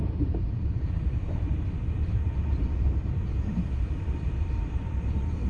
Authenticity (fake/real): fake